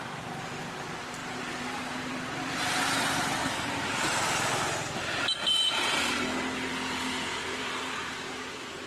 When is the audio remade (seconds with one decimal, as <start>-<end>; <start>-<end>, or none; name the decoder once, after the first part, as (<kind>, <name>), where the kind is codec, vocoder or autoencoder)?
1.2-2.4 (vocoder, BigVGAN v2); 3.4-3.9